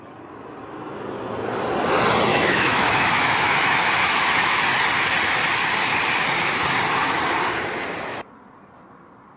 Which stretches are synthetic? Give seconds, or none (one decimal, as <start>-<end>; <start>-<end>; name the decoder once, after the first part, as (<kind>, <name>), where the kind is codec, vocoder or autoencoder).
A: 2.3-4.6 (autoencoder, DAC-VAE)